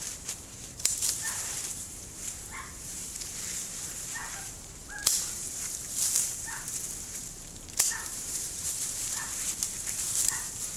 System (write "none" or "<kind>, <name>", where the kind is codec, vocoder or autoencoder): vocoder, BigVGAN v2